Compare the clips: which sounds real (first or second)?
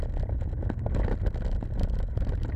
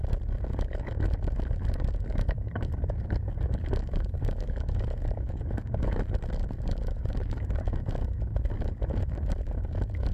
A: first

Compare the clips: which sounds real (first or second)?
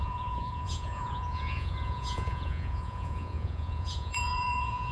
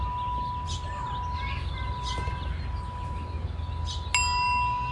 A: second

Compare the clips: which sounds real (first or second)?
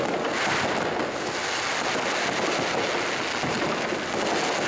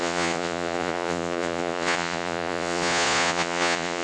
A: first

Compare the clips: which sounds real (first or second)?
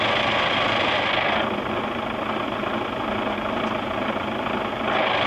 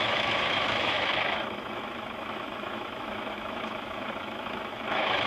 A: first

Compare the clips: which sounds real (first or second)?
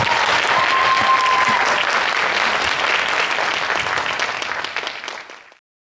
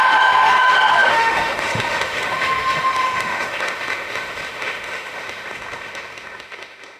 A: first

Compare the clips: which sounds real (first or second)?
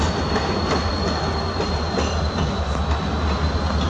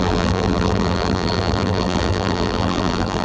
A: first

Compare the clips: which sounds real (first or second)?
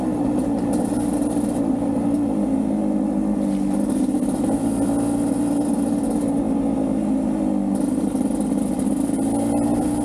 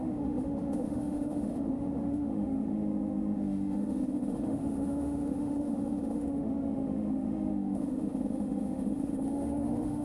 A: first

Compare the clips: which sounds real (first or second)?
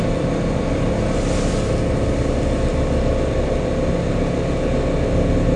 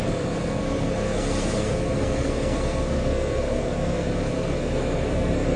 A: first